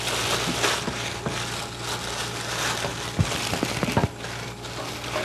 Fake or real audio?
real